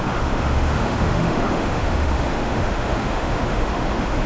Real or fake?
fake